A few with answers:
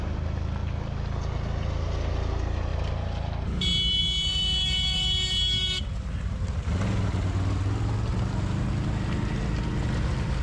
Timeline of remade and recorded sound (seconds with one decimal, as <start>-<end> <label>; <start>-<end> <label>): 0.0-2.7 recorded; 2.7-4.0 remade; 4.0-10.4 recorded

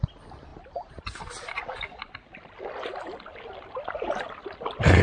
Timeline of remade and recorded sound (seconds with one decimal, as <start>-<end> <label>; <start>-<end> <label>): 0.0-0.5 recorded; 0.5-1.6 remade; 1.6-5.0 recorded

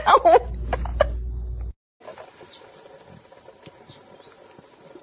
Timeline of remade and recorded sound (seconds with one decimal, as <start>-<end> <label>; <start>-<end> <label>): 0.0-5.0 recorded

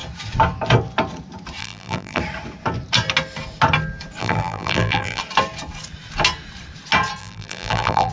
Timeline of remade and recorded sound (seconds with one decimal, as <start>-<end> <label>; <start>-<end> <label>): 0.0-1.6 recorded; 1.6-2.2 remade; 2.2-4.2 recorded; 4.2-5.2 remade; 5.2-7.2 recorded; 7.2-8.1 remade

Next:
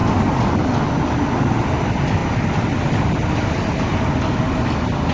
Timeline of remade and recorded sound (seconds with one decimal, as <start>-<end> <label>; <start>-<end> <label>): 0.0-5.1 recorded